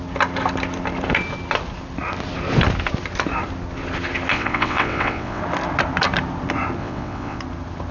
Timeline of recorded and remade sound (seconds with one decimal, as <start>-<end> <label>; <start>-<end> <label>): 0.0-4.3 recorded; 4.3-5.4 remade; 5.4-6.8 recorded; 6.8-7.4 remade; 7.4-7.9 recorded